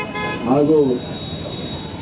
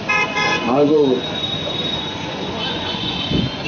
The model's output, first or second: second